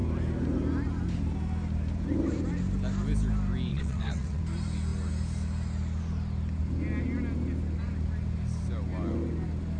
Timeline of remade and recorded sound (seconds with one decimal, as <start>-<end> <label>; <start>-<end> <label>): 0.0-3.7 recorded; 3.7-4.4 remade; 4.4-9.8 recorded